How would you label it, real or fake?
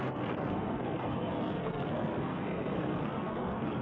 fake